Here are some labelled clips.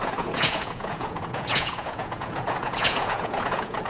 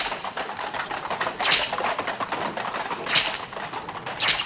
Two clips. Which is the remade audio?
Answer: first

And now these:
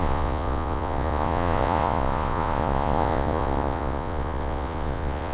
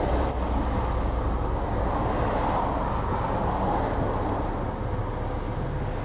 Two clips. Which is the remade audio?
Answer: first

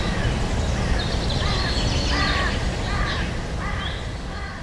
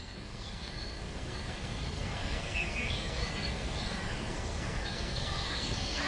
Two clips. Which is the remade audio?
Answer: second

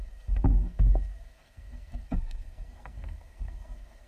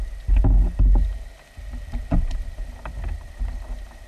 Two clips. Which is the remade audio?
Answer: first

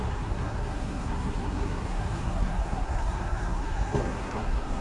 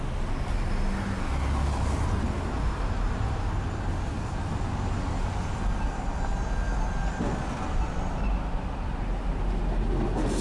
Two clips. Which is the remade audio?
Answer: first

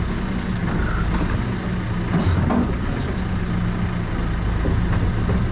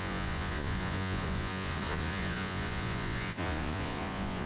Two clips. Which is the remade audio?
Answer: second